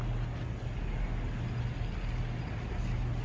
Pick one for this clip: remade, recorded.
recorded